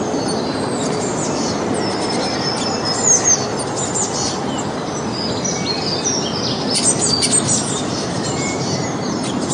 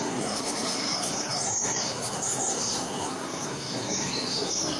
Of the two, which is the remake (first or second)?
second